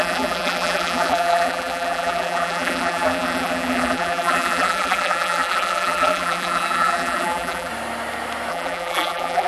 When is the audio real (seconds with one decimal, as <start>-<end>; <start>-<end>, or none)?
7.7-8.5